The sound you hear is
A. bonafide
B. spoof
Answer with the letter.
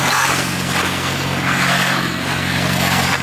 B